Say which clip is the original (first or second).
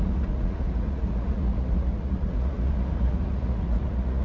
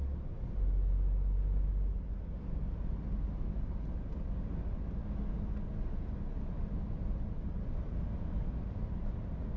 second